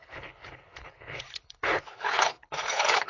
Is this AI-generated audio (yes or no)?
yes